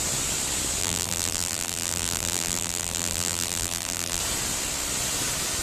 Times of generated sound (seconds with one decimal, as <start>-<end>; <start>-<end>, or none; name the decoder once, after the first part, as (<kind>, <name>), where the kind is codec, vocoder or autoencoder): 0.8-4.2 (vocoder, BigVGAN v2)